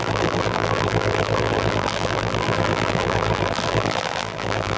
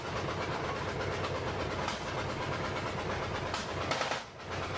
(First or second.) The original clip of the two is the second